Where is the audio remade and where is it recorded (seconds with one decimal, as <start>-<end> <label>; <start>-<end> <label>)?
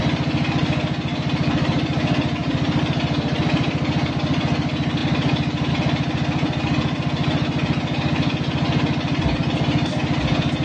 0.0-2.4 recorded; 2.4-4.1 remade; 4.1-10.6 recorded